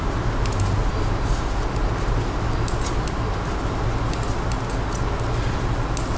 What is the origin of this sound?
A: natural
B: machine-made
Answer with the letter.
A